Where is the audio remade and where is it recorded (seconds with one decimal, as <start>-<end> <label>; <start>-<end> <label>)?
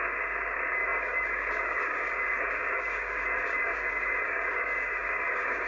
0.0-5.7 remade